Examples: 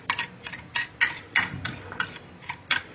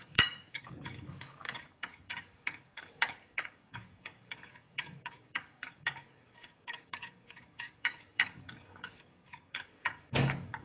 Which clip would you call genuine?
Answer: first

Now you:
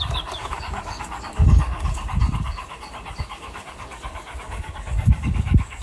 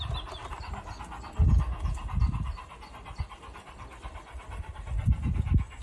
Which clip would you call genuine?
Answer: second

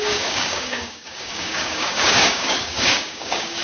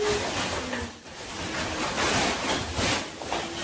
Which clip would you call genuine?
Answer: second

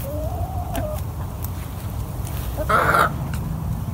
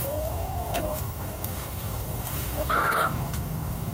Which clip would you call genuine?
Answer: first